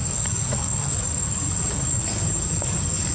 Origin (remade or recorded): remade